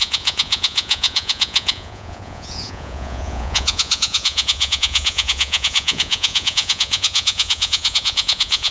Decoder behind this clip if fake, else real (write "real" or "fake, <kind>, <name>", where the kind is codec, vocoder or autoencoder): fake, vocoder, Vocos